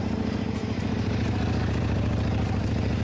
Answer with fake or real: fake